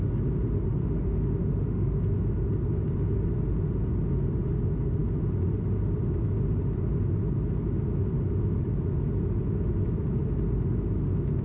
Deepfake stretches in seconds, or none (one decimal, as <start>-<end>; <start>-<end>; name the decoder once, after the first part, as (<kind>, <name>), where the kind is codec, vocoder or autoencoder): 0.8-2.0 (autoencoder, DAC-VAE)